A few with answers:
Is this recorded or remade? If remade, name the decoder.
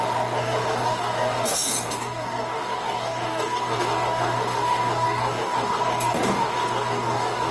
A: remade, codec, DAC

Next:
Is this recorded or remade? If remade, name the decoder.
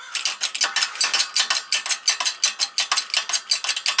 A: recorded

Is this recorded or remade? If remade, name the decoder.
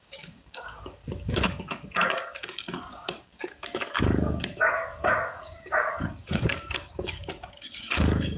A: remade, codec, DAC